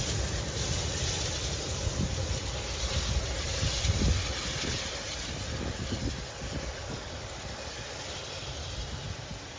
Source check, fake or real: real